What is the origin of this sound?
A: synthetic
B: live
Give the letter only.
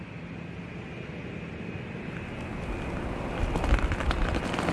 B